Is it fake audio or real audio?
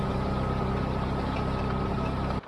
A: real